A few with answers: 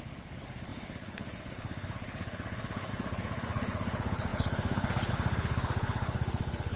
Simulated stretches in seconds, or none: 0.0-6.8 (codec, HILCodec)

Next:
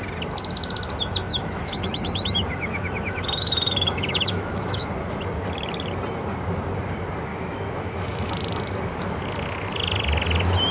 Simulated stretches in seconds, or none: 1.3-4.9 (autoencoder, DAC-VAE); 7.3-8.3

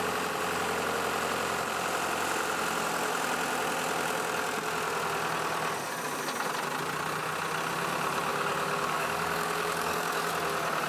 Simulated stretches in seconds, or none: 8.3-10.3 (codec, DAC)

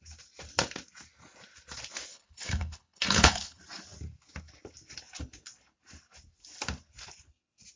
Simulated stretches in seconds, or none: 2.1-3.6 (codec, HILCodec)

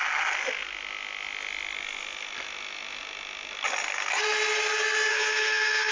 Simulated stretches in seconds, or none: 5.1-5.9 (codec, SNAC)

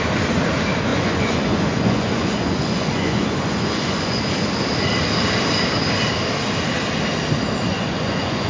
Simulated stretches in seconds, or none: 0.9-4.2 (vocoder, Vocos); 7.7-8.5

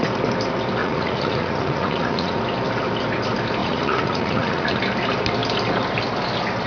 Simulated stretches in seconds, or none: 0.8-2.4 (vocoder, Vocos); 3.6-4.8

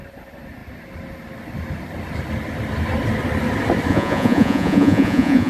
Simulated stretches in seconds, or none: 3.9-5.5 (vocoder, Vocos)